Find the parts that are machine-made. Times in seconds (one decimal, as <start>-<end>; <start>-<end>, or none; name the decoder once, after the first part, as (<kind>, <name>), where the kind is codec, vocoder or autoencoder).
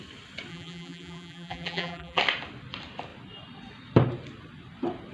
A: 0.5-2.2 (vocoder, BigVGAN v2)